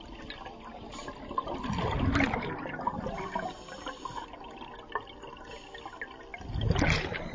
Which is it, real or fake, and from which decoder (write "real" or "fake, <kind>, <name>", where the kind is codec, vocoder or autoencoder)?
real